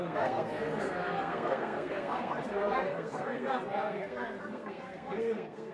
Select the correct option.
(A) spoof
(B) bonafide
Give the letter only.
A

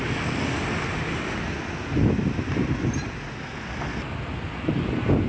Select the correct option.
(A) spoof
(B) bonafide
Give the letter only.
B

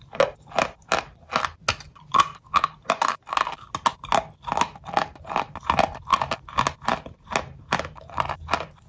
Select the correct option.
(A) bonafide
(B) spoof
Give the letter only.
A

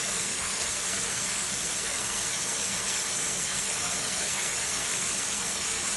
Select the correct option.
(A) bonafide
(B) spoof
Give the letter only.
B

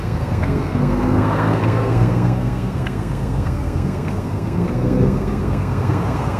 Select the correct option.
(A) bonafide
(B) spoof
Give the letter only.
B